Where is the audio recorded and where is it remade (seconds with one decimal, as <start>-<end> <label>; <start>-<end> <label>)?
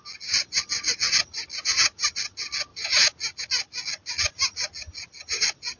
0.0-5.8 recorded